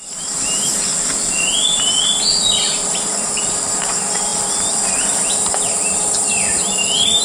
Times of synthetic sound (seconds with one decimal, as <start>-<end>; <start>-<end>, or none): 0.0-0.9; 2.9-7.2